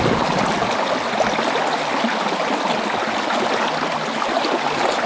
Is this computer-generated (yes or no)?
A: no